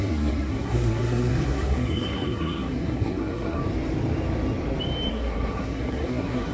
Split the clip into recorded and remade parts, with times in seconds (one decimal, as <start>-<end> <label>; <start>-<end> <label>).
0.0-3.6 remade; 3.6-5.1 recorded; 5.1-6.5 remade